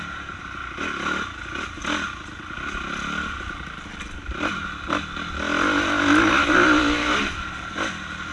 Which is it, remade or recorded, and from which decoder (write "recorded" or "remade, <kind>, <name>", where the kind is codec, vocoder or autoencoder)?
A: recorded